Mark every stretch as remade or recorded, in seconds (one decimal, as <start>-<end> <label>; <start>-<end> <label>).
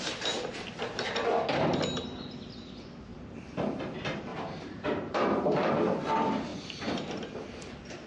0.0-3.1 recorded; 3.1-3.8 remade; 3.8-4.3 recorded; 4.3-5.7 remade; 5.7-6.5 recorded; 6.5-7.2 remade; 7.2-8.1 recorded